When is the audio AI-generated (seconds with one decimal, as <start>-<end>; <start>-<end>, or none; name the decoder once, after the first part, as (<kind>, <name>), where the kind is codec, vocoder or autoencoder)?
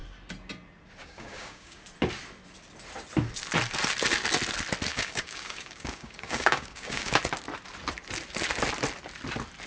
1.0-1.8 (codec, DAC); 4.9-7.2